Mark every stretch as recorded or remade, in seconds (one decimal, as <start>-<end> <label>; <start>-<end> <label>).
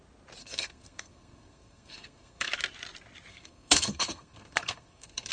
0.0-0.4 recorded; 0.4-2.5 remade; 2.5-3.3 recorded; 3.3-5.3 remade